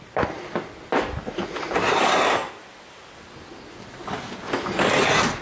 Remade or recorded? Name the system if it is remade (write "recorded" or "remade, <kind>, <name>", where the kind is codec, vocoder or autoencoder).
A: recorded